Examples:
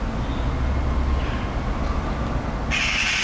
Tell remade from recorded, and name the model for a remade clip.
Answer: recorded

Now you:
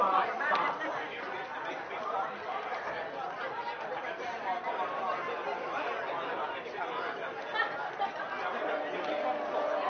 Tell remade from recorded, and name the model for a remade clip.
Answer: recorded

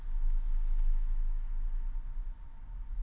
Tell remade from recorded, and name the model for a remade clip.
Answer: recorded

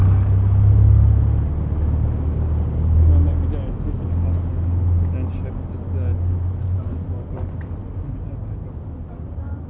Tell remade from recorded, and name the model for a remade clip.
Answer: recorded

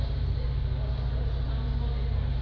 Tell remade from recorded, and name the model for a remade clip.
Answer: recorded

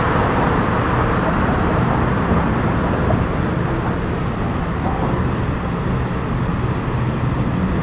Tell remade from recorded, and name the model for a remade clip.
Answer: recorded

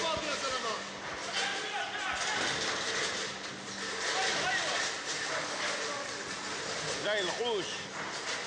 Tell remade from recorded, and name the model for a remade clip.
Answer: recorded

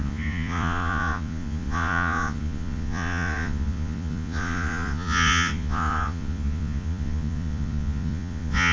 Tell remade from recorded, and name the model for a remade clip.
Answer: remade, vocoder, Vocos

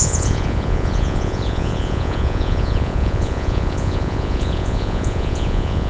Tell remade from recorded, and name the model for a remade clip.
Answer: remade, vocoder, Vocos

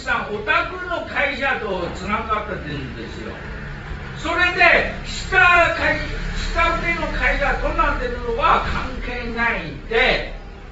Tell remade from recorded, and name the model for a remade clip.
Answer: remade, vocoder, BigVGAN v2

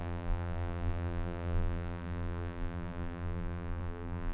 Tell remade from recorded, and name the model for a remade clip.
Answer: remade, vocoder, BigVGAN v2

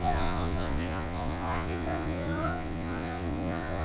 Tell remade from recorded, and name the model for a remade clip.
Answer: remade, vocoder, Vocos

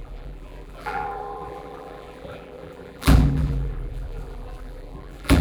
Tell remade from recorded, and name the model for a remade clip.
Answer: remade, vocoder, BigVGAN v2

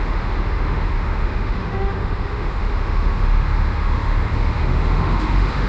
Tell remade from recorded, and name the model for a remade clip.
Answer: remade, autoencoder, DAC-VAE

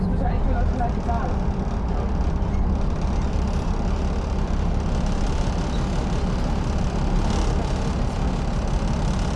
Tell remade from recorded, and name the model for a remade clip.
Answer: recorded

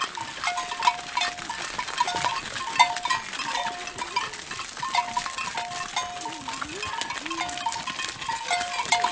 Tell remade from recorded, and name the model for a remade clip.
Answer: recorded